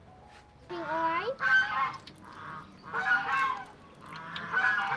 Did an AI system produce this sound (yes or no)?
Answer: no